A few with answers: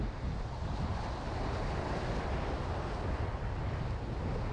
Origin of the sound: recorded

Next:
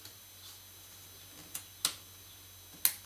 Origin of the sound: recorded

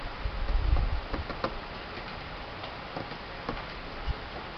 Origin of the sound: recorded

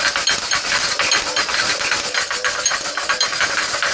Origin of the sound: remade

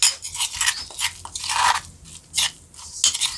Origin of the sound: recorded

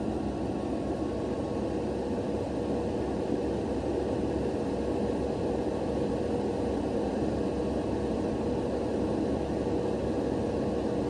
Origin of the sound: remade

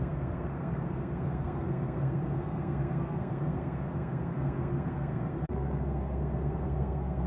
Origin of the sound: remade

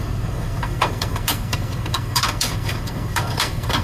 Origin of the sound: remade